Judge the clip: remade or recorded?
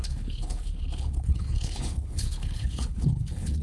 remade